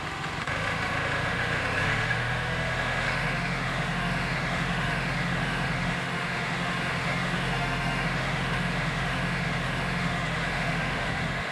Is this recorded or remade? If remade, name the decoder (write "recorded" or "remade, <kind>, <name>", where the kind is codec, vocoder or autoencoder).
remade, autoencoder, DAC-VAE